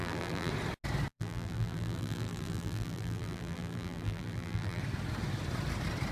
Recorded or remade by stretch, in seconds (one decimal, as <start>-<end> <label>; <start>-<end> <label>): 0.0-0.5 remade; 0.5-1.1 recorded; 1.1-4.8 remade; 4.8-6.1 recorded